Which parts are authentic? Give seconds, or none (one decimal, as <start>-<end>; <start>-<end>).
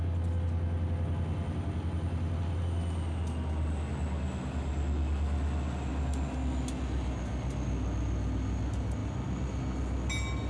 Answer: 0.0-10.5